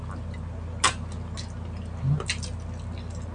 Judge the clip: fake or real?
real